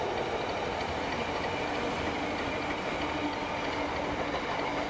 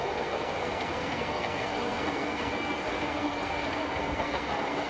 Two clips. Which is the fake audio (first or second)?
second